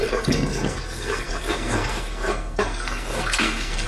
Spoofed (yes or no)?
yes